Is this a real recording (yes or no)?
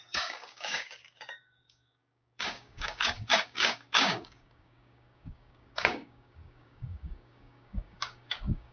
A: no